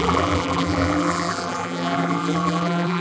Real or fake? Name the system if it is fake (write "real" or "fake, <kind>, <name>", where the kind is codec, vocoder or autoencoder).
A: fake, vocoder, BigVGAN v2